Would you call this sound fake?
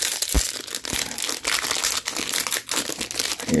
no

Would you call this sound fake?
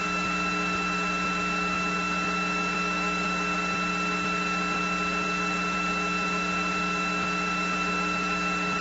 no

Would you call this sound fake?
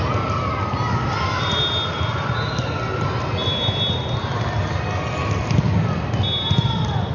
no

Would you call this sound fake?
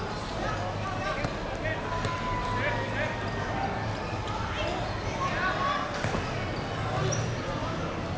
no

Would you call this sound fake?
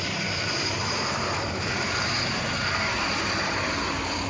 yes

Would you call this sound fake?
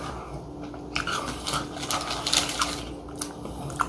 no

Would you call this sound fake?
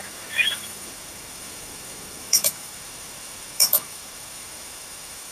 yes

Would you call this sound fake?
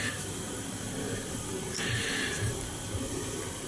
no